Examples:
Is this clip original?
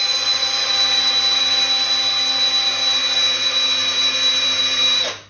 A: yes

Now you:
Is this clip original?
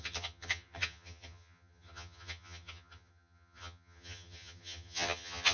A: no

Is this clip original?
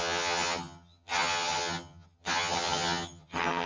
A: no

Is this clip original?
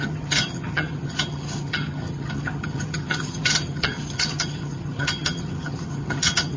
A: no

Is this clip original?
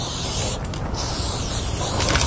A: yes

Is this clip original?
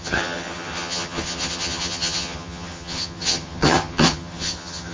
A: no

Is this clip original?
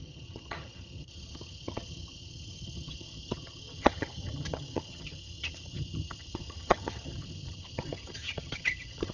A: no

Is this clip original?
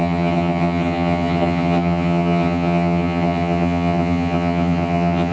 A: no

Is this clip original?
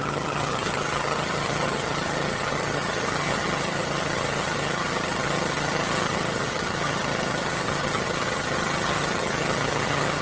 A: no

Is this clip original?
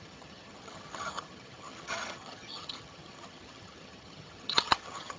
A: no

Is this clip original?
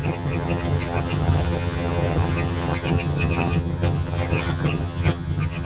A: no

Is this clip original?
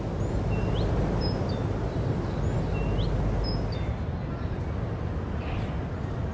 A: yes